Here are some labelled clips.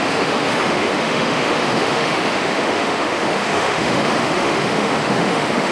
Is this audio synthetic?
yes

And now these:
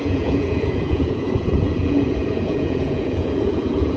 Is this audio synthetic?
yes